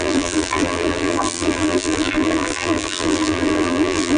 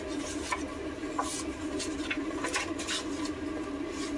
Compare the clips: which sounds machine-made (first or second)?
first